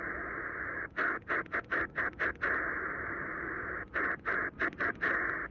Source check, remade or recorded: recorded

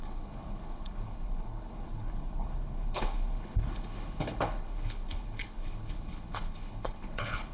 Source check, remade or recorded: remade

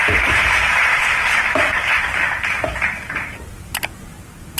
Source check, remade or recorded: remade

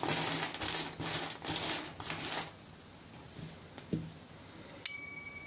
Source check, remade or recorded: recorded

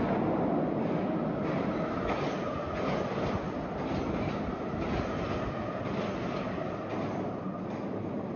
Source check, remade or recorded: recorded